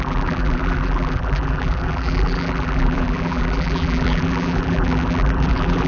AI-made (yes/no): yes